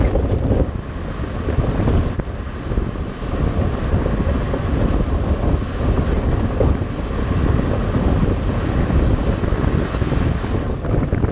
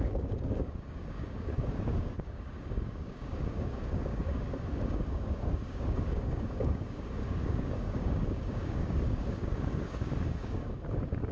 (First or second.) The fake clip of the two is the second